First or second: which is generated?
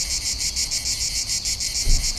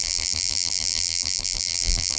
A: second